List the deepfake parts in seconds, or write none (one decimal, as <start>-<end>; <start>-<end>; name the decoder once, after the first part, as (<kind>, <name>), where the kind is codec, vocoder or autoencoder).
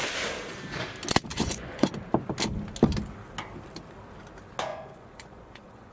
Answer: 1.3-1.9 (vocoder, Vocos); 4.7-5.9